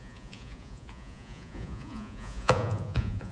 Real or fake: fake